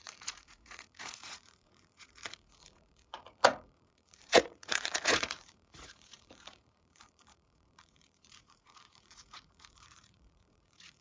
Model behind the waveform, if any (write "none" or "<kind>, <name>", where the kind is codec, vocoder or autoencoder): vocoder, Vocos